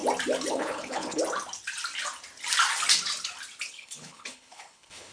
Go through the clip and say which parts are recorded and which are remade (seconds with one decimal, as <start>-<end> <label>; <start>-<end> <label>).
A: 0.0-0.5 recorded; 0.5-1.2 remade; 1.2-3.7 recorded; 3.7-5.1 remade